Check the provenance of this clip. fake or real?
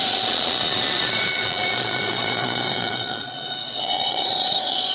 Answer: fake